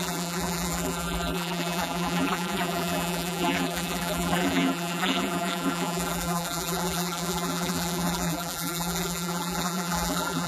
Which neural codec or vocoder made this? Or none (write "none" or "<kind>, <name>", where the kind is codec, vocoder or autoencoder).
vocoder, BigVGAN v2